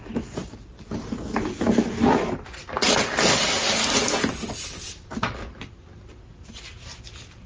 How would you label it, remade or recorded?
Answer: recorded